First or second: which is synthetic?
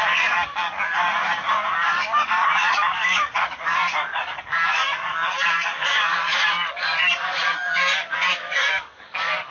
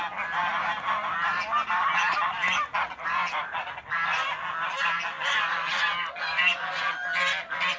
first